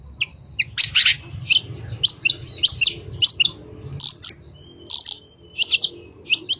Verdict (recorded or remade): recorded